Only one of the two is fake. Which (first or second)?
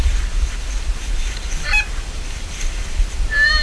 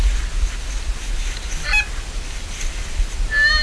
first